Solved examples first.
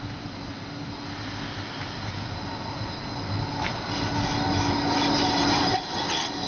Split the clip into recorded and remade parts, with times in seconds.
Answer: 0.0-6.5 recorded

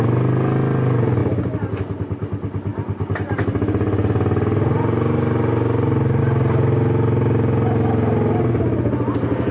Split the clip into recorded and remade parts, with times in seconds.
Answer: 0.0-9.5 recorded

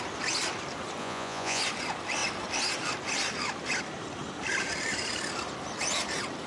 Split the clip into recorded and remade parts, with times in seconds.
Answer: 0.0-1.0 recorded; 1.0-1.6 remade; 1.6-6.5 recorded

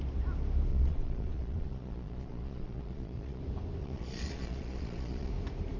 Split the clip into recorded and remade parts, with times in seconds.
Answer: 0.0-0.7 recorded; 0.7-3.4 remade; 3.4-3.8 recorded; 3.8-5.3 remade; 5.3-5.8 recorded

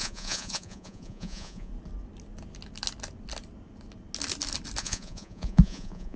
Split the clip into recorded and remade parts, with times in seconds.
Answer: 0.0-1.7 remade; 1.7-4.8 recorded; 4.8-6.2 remade

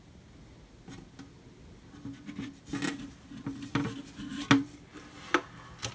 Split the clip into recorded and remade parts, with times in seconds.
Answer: 0.0-5.9 recorded

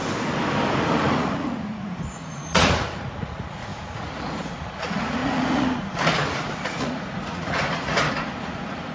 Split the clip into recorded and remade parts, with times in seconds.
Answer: 0.0-0.8 recorded; 0.8-8.9 remade